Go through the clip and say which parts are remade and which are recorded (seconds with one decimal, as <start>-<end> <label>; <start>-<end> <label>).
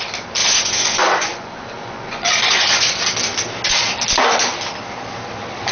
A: 0.0-0.4 recorded; 0.4-2.9 remade; 2.9-5.7 recorded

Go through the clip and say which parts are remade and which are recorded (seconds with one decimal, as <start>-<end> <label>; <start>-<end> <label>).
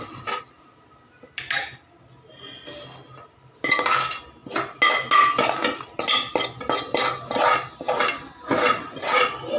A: 0.0-9.6 recorded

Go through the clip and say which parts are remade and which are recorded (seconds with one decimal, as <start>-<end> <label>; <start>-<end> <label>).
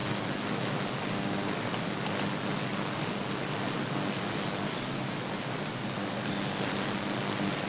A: 0.0-7.7 recorded